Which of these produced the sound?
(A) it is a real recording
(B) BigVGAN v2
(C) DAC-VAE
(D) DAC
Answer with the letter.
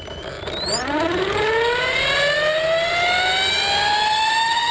A